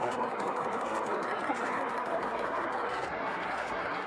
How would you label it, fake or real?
fake